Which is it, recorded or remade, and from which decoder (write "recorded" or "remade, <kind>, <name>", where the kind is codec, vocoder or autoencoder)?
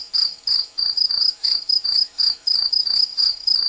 remade, autoencoder, DAC-VAE